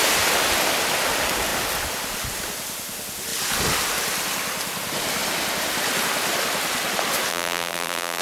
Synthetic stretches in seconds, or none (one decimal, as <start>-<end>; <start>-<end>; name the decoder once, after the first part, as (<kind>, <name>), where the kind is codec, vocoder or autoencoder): 7.3-8.2 (vocoder, BigVGAN v2)